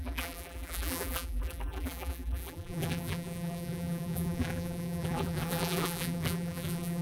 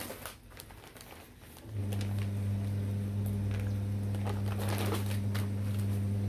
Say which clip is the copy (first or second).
first